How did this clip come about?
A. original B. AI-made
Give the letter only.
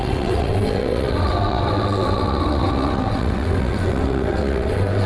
B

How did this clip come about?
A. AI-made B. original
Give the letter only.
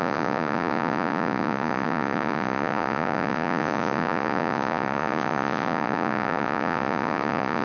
A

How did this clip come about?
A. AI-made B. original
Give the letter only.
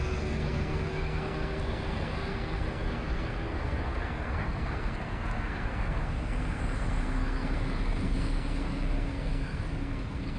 A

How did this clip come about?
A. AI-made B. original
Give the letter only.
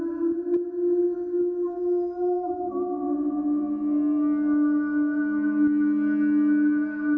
B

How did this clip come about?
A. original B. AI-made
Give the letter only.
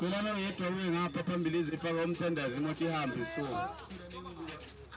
A